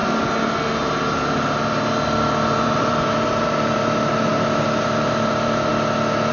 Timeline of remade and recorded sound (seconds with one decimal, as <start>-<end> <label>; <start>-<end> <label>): 0.0-2.6 recorded; 2.6-5.7 remade; 5.7-6.3 recorded